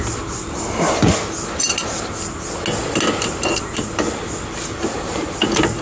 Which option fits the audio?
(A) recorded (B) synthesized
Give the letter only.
A